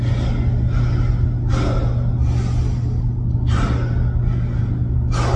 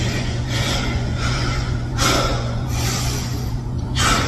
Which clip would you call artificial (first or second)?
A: second